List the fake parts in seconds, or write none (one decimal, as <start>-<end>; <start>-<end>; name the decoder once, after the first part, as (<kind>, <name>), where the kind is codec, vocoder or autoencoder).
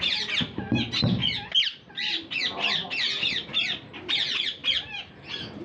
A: none